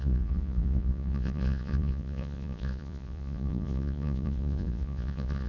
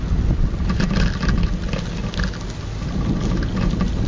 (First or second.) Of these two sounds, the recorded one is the second